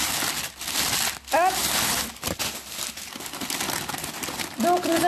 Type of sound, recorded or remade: recorded